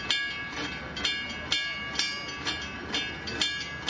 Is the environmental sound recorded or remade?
recorded